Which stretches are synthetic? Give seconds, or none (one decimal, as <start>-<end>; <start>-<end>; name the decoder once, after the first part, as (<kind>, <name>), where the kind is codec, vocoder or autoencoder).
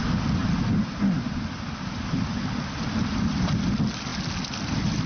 none